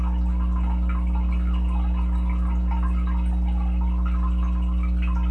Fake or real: real